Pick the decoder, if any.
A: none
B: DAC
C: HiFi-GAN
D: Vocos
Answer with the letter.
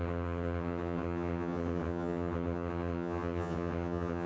C